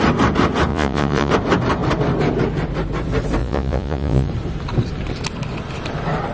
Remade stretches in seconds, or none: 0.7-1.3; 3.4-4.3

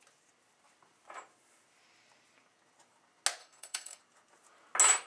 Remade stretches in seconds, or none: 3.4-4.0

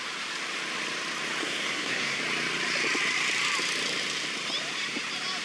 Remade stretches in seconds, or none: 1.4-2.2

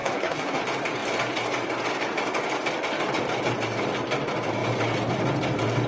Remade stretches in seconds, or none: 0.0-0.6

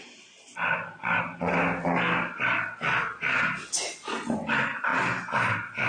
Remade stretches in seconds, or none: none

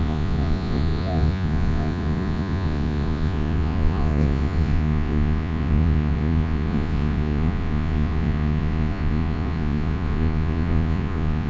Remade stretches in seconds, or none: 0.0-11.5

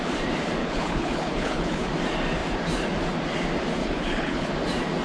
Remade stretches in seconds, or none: 0.6-1.9; 3.8-4.5